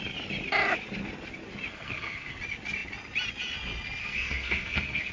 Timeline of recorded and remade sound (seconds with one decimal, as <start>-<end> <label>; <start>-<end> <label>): 0.0-1.7 recorded; 1.7-2.3 remade; 2.3-4.0 recorded; 4.0-5.1 remade